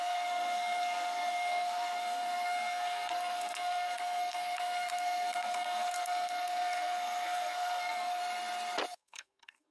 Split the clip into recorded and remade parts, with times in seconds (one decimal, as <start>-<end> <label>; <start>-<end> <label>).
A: 0.0-8.2 remade; 8.2-8.9 recorded; 8.9-9.7 remade